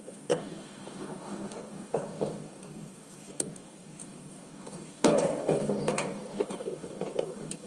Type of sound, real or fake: fake